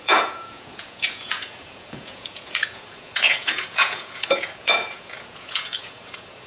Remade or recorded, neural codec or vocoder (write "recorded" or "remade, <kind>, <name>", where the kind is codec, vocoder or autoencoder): remade, vocoder, Vocos